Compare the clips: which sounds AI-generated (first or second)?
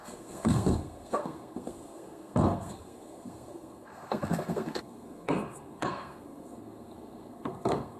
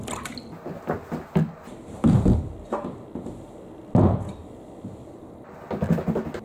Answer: first